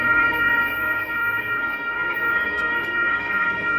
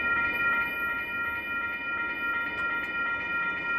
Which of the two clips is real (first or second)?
second